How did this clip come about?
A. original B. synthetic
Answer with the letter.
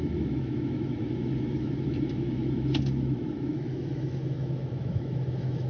B